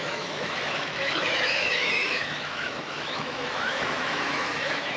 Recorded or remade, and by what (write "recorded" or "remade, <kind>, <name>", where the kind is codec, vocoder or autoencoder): remade, autoencoder, DAC-VAE